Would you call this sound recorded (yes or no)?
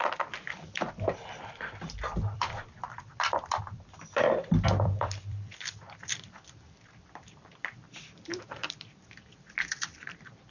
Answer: no